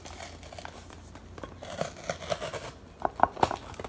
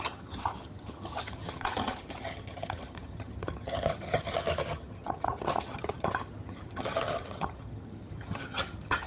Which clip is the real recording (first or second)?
first